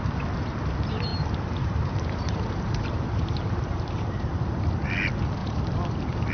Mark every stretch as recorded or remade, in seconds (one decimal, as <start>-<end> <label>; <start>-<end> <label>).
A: 0.0-1.1 recorded; 1.1-4.9 remade; 4.9-5.4 recorded; 5.4-6.3 remade